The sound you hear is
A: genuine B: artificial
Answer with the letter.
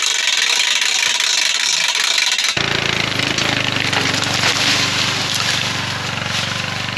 A